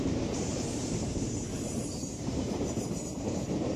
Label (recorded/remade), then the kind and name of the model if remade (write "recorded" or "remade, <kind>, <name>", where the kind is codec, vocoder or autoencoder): remade, vocoder, BigVGAN v2